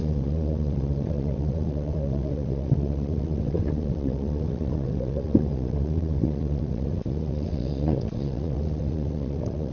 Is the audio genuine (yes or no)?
no